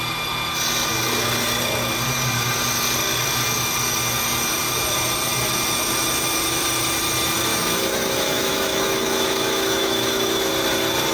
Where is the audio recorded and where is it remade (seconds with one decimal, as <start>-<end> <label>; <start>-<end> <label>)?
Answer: 0.0-7.5 recorded; 7.5-10.5 remade; 10.5-11.1 recorded